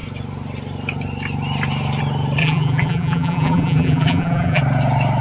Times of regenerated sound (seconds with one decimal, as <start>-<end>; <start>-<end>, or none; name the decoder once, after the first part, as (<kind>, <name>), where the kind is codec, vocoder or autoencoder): 2.4-4.6 (vocoder, BigVGAN v2)